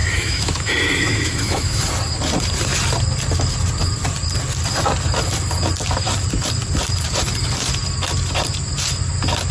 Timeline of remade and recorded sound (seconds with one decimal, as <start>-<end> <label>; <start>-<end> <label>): 0.0-0.7 remade; 0.7-1.1 recorded; 1.1-1.8 remade; 1.8-9.5 recorded